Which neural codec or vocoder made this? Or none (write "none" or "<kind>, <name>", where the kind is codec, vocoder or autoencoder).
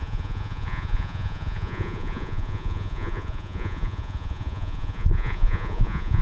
vocoder, Vocos